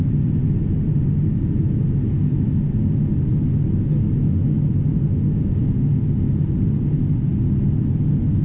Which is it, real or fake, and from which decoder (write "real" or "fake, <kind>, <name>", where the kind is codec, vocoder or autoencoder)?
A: real